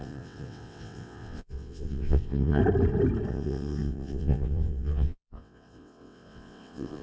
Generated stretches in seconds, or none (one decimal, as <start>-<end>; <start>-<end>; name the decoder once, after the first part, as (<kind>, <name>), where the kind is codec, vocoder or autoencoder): 0.0-2.6 (vocoder, WaveNeXt); 3.3-7.0